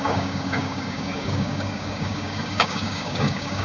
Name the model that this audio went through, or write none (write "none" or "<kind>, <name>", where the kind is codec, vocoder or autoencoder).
codec, DAC